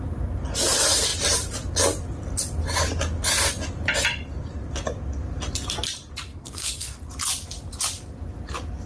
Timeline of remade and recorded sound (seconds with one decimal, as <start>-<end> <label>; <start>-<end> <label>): 0.0-6.3 recorded; 6.3-7.0 remade; 7.0-8.9 recorded